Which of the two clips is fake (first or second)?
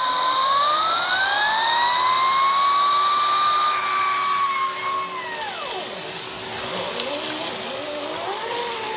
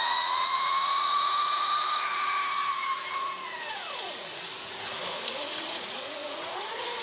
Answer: second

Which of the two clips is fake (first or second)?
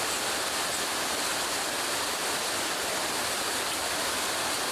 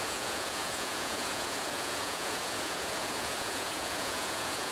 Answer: second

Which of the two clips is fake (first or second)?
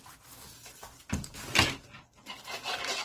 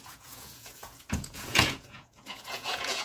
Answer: second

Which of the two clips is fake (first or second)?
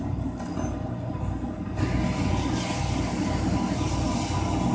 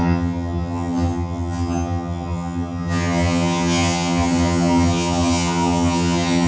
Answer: second